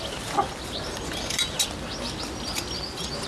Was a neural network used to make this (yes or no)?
no